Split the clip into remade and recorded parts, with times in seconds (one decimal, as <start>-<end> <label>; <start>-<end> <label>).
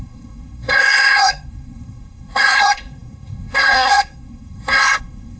0.0-5.4 remade